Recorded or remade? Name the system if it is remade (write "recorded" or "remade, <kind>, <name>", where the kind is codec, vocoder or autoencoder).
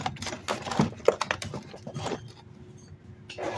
recorded